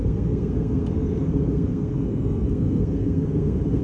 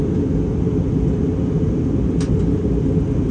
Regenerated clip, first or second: first